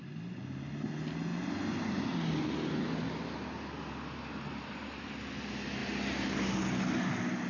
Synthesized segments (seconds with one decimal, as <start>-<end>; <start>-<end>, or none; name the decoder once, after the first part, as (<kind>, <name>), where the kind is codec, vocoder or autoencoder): none